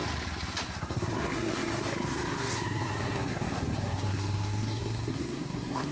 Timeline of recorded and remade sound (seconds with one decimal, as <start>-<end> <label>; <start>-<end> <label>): 0.0-0.8 recorded; 0.8-5.9 remade